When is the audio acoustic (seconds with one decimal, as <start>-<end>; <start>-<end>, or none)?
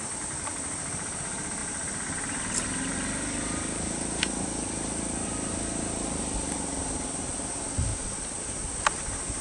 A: 0.0-9.4